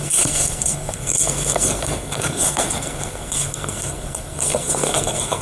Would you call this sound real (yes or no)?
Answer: no